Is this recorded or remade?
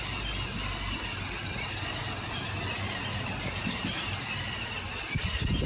recorded